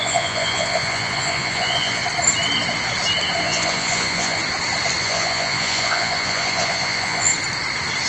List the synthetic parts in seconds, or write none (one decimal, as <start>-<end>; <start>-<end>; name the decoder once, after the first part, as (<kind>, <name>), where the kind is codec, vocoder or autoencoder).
0.0-2.0 (vocoder, Vocos); 3.4-4.4; 5.0-7.3